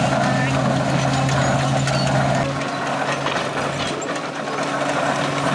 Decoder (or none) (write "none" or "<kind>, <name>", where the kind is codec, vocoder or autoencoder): none